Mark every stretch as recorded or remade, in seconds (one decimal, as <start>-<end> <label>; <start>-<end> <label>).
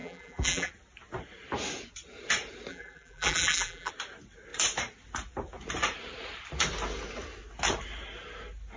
0.0-0.7 remade; 0.7-2.7 recorded; 2.7-3.9 remade; 3.9-8.8 recorded